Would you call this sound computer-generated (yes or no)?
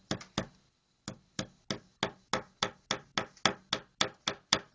no